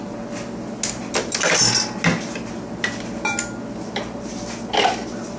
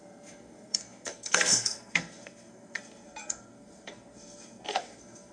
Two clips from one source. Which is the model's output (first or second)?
second